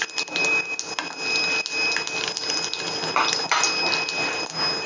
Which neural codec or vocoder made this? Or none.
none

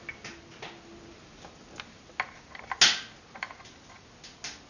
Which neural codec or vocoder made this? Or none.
none